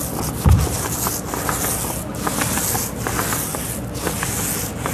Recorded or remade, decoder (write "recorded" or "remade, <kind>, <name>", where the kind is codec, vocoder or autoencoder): recorded